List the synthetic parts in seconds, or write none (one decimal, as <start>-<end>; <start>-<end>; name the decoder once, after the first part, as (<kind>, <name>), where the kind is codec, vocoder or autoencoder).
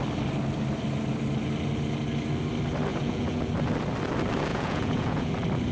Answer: 2.9-3.5 (vocoder, Vocos); 4.5-5.3